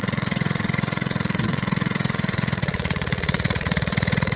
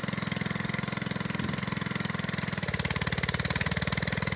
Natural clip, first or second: second